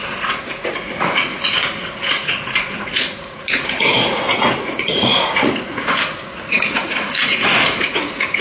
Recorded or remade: remade